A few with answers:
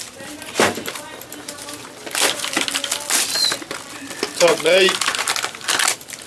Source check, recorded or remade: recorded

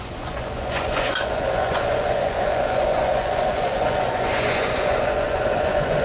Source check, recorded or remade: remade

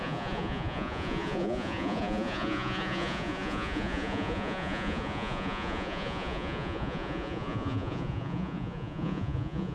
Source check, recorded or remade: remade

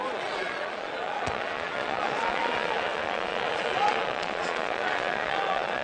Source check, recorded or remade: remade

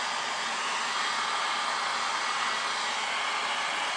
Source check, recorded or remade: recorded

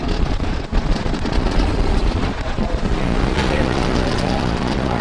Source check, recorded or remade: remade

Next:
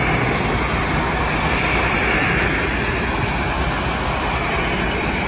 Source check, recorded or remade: recorded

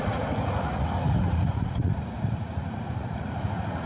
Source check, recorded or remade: remade